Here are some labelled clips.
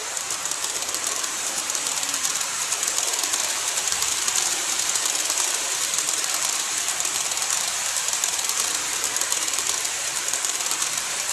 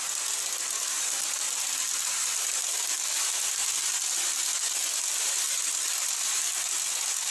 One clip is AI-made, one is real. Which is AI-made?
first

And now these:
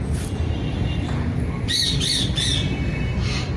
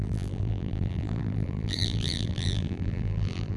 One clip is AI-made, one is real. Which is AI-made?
second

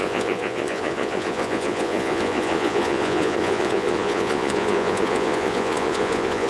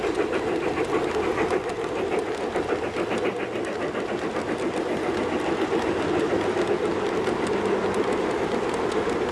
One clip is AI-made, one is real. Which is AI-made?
first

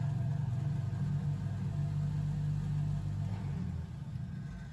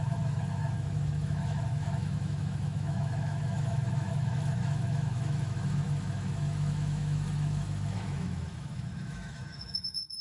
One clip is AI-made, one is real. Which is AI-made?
second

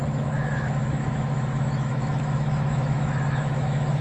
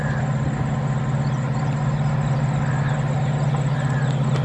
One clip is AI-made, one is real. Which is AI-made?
first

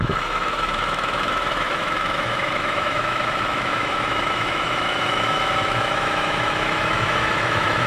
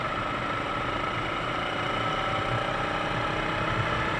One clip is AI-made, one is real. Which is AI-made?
first